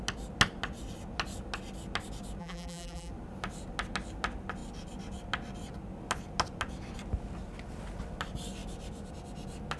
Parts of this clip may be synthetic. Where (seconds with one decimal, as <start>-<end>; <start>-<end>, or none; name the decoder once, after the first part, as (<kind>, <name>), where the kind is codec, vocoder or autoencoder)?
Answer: 2.4-3.1 (vocoder, BigVGAN v2)